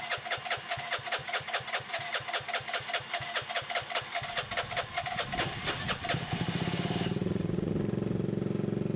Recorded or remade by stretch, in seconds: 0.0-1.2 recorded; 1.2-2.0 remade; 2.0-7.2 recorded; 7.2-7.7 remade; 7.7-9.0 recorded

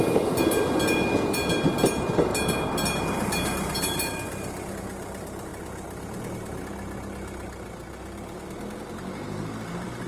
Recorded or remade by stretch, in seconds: 0.0-10.1 recorded